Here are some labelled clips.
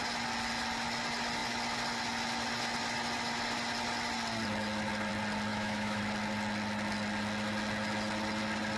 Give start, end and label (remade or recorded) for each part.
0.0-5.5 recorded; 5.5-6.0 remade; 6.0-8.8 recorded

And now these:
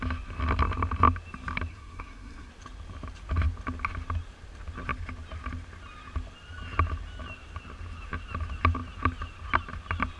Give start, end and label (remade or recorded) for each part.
0.0-1.7 recorded; 1.7-2.5 remade; 2.5-10.2 recorded

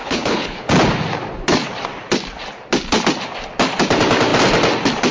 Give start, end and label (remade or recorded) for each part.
0.0-0.7 remade; 0.7-5.1 recorded

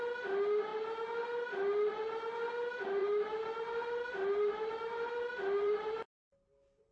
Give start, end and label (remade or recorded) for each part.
0.0-0.7 recorded; 0.7-1.5 remade; 1.5-3.0 recorded; 3.0-4.7 remade; 4.7-5.6 recorded; 5.6-6.1 remade; 6.1-6.9 recorded

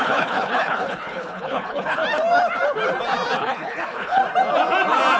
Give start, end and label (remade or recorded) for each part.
0.0-2.0 remade; 2.0-3.4 recorded; 3.4-4.2 remade; 4.2-5.2 recorded

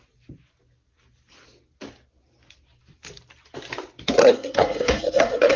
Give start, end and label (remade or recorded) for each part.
0.0-4.2 recorded; 4.2-5.6 remade